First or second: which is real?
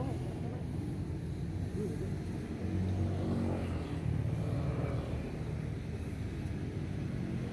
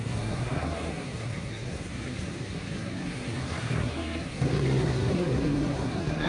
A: first